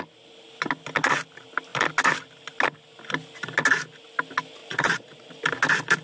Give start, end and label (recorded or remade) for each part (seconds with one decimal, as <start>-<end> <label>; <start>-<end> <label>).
0.0-4.6 recorded; 4.6-5.4 remade; 5.4-6.0 recorded